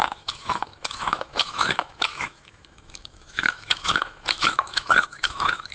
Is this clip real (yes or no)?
no